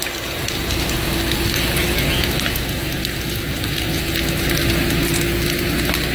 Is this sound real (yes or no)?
yes